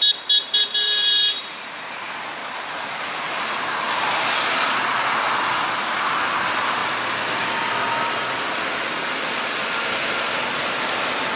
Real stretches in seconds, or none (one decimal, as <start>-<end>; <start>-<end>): 2.4-6.1; 6.8-10.6